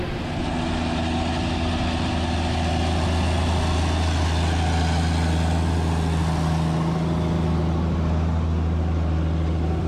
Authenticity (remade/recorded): recorded